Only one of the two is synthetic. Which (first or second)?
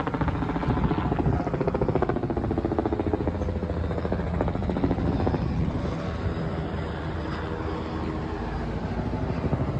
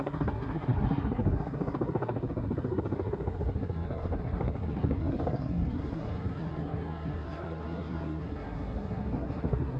second